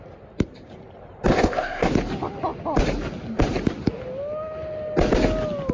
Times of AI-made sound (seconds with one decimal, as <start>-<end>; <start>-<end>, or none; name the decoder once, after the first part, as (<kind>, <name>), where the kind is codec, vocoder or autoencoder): 1.3-1.9 (codec, ZipCodec)